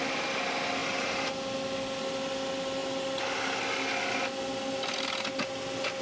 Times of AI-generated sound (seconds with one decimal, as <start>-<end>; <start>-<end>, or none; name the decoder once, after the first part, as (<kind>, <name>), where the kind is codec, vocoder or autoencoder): none